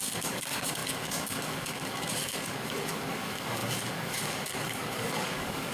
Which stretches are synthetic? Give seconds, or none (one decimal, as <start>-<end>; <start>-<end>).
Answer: 0.0-5.7